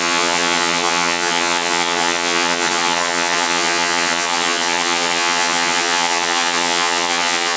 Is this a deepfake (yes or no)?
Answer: yes